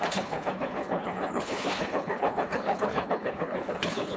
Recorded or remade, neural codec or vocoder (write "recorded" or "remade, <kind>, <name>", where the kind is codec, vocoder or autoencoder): remade, codec, HILCodec